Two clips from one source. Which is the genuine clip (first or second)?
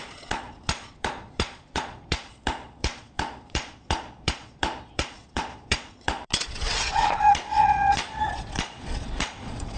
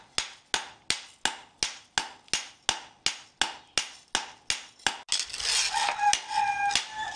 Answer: second